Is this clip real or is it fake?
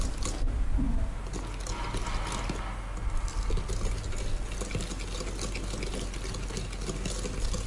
real